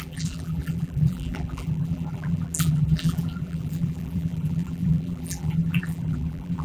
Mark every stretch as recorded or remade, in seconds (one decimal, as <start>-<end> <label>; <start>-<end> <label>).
0.0-6.6 remade